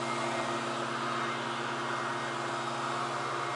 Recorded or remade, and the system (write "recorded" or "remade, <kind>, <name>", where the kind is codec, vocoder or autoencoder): recorded